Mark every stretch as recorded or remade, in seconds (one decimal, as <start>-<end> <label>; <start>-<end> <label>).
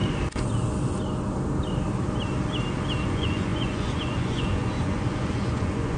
0.0-3.1 recorded; 3.1-6.0 remade